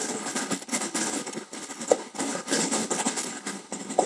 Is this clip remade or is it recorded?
remade